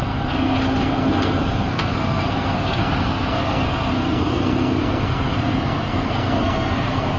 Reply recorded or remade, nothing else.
remade